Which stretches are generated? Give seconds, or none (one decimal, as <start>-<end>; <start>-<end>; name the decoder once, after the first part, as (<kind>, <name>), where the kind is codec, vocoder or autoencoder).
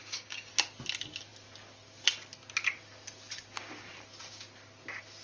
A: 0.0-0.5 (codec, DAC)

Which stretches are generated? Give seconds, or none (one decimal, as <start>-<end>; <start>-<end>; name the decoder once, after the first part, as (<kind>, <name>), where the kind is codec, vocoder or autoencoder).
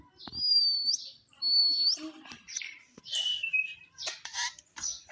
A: none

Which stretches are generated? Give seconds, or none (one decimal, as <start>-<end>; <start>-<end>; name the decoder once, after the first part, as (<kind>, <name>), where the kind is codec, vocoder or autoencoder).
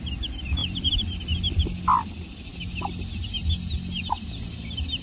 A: 0.6-1.2 (vocoder, BigVGAN v2)